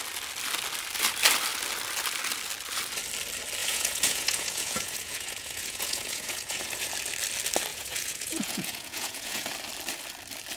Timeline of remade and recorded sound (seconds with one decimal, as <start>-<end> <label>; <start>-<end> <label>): 0.0-3.6 recorded; 3.6-6.9 remade; 6.9-7.7 recorded; 7.7-9.5 remade; 9.5-10.6 recorded